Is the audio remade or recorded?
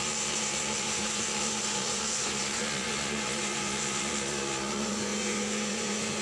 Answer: remade